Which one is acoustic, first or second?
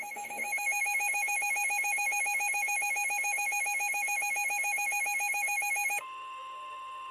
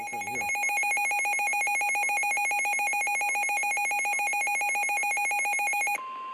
second